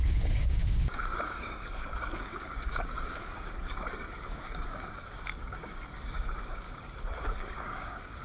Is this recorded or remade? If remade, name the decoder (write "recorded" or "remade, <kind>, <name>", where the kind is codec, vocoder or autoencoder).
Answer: remade, codec, DAC